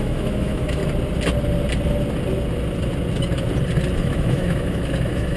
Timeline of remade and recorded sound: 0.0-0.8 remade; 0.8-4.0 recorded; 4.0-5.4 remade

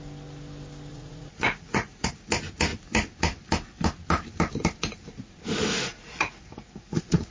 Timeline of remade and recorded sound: 0.0-0.9 recorded; 0.9-2.1 remade; 2.1-5.7 recorded; 5.7-7.3 remade

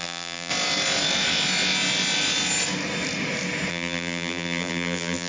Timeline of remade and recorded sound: 0.0-0.5 remade; 0.5-3.7 recorded; 3.7-5.3 remade

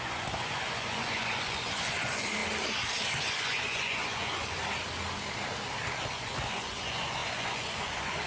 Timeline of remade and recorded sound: 0.0-2.4 remade; 2.4-3.2 recorded; 3.2-4.6 remade; 4.6-6.1 recorded; 6.1-8.3 remade

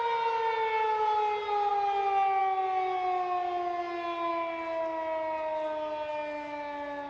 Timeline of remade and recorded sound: 0.0-7.1 recorded

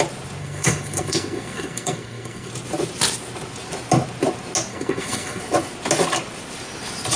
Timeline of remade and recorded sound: 0.0-0.4 recorded; 0.4-2.5 remade; 2.5-4.7 recorded; 4.7-5.4 remade; 5.4-7.2 recorded